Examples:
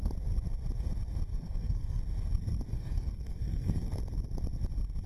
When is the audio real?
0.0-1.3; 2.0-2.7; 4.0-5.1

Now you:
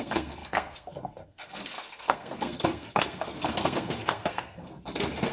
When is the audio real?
none

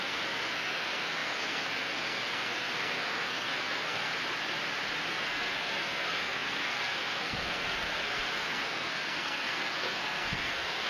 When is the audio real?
4.1-5.1

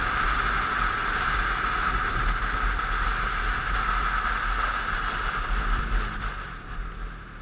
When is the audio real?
0.0-7.4

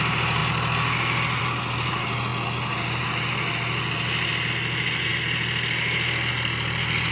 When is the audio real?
0.0-7.1